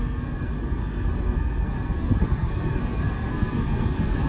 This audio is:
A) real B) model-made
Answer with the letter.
B